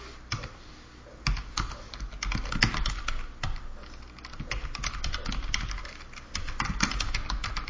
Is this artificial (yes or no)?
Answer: no